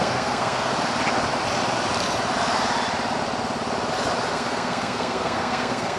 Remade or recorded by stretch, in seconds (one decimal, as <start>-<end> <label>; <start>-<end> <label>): 0.0-0.7 remade; 0.7-4.3 recorded; 4.3-6.0 remade